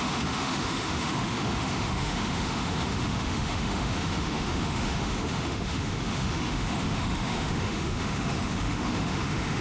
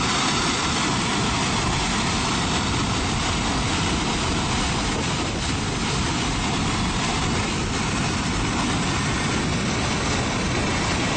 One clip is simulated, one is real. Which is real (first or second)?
second